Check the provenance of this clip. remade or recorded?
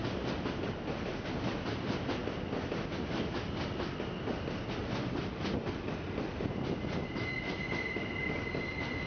recorded